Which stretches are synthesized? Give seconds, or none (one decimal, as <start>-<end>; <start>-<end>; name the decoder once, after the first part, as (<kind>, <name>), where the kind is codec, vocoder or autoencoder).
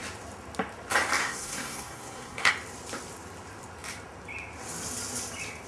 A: 1.2-2.5 (codec, SNAC)